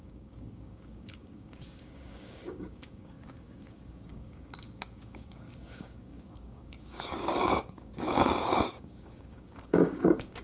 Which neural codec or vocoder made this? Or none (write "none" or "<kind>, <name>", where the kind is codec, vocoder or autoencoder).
codec, DAC